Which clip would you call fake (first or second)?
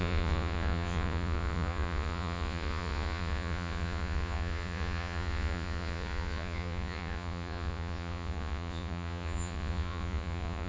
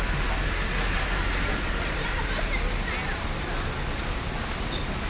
first